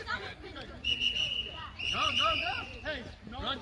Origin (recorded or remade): remade